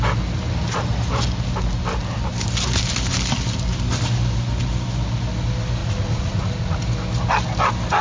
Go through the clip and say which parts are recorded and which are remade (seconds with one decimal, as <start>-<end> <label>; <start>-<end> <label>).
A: 0.0-5.8 recorded; 5.8-6.8 remade; 6.8-8.0 recorded